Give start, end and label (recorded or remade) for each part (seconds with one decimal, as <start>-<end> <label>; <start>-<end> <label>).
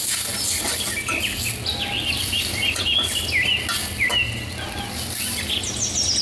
0.0-1.7 recorded; 1.7-2.8 remade; 2.8-6.2 recorded